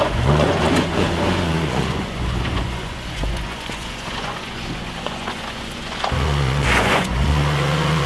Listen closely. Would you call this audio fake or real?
fake